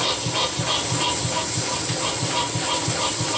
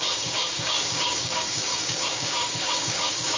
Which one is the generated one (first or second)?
second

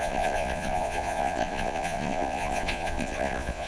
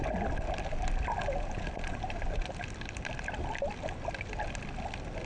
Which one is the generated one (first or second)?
first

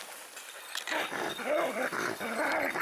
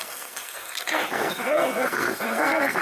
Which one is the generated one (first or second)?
second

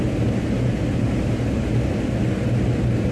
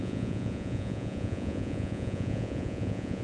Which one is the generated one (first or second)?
second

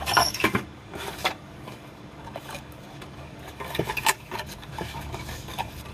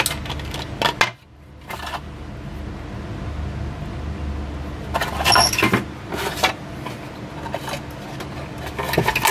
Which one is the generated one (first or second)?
first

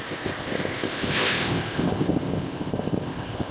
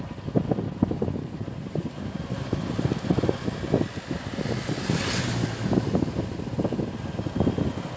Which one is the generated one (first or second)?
first